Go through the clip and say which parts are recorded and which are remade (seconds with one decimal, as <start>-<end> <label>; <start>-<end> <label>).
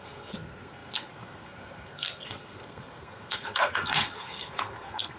0.0-5.2 remade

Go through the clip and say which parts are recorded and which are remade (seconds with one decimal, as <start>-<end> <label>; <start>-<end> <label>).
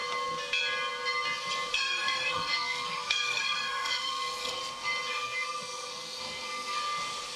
0.0-1.7 recorded; 1.7-4.6 remade; 4.6-5.1 recorded; 5.1-6.8 remade; 6.8-7.4 recorded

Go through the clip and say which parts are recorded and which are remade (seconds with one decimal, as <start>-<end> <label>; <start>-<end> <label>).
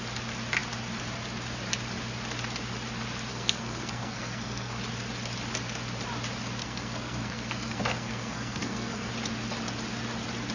0.0-3.3 recorded; 3.3-4.8 remade; 4.8-6.6 recorded; 6.6-9.1 remade; 9.1-10.5 recorded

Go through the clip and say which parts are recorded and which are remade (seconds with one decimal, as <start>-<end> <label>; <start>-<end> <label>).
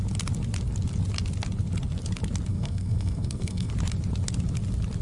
0.0-2.5 recorded; 2.5-3.7 remade; 3.7-5.0 recorded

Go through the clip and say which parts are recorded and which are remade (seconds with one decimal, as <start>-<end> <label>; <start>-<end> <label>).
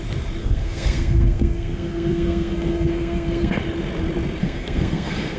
0.0-0.4 recorded; 0.4-3.6 remade; 3.6-4.4 recorded; 4.4-5.4 remade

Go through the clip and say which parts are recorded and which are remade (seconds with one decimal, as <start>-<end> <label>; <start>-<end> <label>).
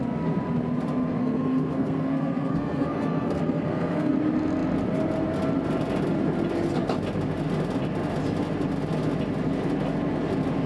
0.0-1.2 recorded; 1.2-4.1 remade; 4.1-10.7 recorded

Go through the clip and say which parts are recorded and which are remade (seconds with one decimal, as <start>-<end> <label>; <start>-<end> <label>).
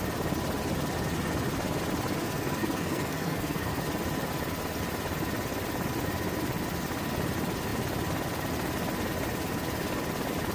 0.0-2.2 recorded; 2.2-3.8 remade; 3.8-10.5 recorded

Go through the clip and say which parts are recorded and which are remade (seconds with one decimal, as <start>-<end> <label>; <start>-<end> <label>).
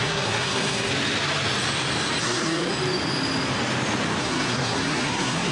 0.0-0.9 remade; 0.9-2.2 recorded; 2.2-2.7 remade; 2.7-4.2 recorded; 4.2-5.5 remade